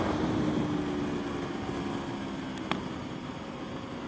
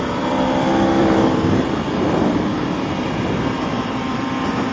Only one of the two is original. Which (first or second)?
first